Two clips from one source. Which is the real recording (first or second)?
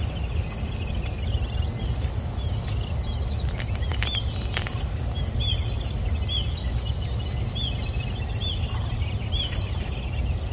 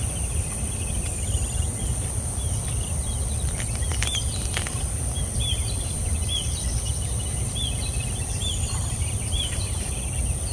first